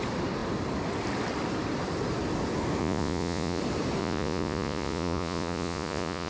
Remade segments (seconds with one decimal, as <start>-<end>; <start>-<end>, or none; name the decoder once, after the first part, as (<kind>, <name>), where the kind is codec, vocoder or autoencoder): 2.8-3.6 (vocoder, Vocos); 4.0-6.3